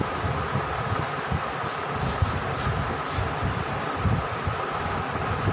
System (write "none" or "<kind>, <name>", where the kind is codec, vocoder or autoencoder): none